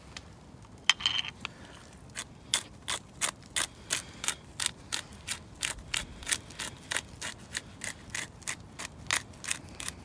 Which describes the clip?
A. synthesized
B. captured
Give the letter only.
B